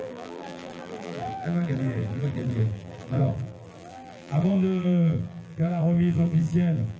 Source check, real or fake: fake